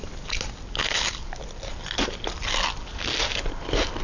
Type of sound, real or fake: real